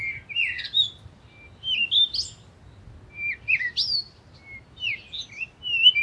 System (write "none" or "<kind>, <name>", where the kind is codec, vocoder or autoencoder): none